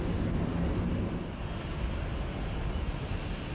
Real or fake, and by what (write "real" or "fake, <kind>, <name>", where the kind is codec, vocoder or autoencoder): real